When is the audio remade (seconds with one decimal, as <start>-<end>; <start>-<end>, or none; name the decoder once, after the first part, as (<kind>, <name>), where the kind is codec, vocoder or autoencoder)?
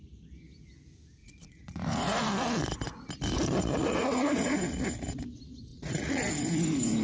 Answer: 1.2-2.2 (vocoder, Vocos); 3.8-4.5; 5.7-6.3